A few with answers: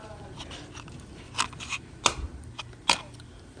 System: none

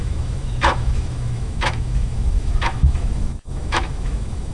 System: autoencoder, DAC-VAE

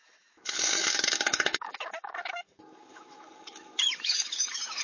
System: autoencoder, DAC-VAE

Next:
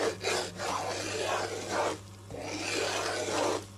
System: none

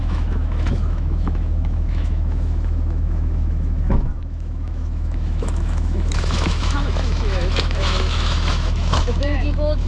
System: autoencoder, DAC-VAE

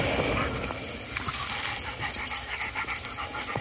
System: none